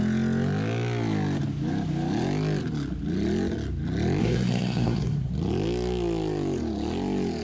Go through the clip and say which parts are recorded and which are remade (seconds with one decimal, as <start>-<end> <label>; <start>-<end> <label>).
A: 0.0-4.2 recorded; 4.2-5.3 remade; 5.3-7.4 recorded